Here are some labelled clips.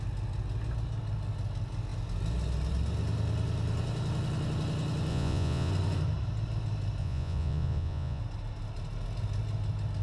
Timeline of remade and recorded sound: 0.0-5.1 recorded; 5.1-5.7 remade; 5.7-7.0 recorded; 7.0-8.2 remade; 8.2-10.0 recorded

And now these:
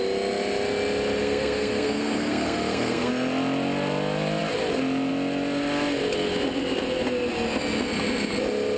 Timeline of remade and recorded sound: 0.0-1.2 recorded; 1.2-3.1 remade; 3.1-8.8 recorded

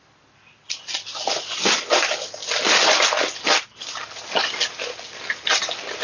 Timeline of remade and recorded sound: 0.0-6.0 recorded

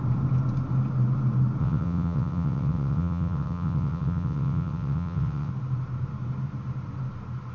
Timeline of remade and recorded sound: 0.0-1.6 recorded; 1.6-5.5 remade; 5.5-7.5 recorded

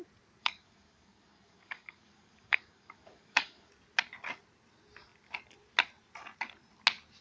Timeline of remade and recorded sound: 0.0-0.4 recorded; 0.4-3.7 remade; 3.7-7.2 recorded